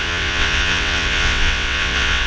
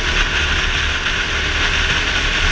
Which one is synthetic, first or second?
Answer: first